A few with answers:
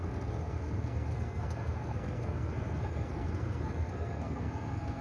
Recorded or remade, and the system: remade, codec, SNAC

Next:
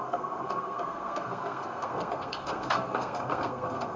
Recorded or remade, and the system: remade, codec, SNAC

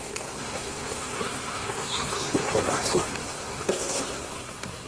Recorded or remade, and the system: remade, codec, SNAC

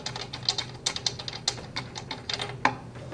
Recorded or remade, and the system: recorded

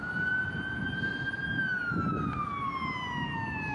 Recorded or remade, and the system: recorded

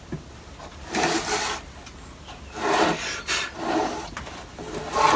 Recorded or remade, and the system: recorded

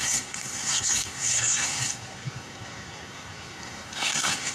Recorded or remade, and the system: remade, codec, SNAC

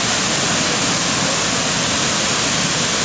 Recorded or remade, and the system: recorded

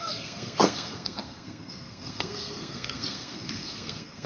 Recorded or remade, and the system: remade, codec, SNAC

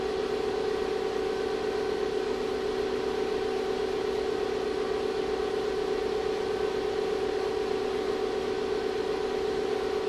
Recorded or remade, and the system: recorded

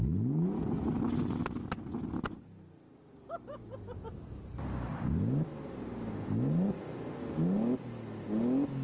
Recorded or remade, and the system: recorded